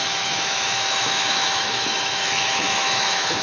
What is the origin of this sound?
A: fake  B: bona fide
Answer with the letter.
A